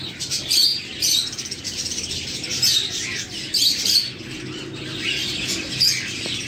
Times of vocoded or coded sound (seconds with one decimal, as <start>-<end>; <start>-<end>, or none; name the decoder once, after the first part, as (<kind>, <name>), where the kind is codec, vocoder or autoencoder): 0.0-5.2 (vocoder, BigVGAN v2); 6.1-6.5